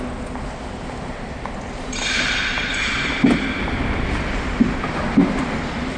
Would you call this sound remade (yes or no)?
no